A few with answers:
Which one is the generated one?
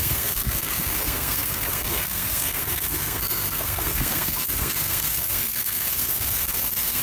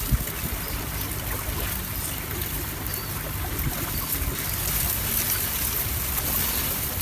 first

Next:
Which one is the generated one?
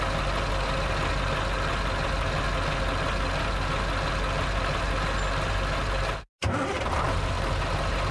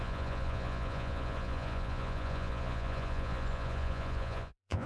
second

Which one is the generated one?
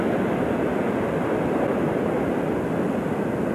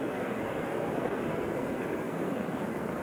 second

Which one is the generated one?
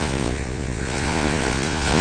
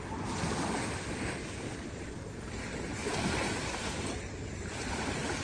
first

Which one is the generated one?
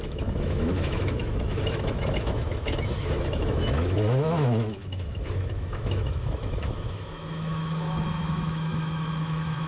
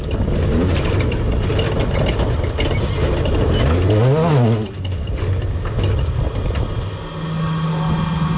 first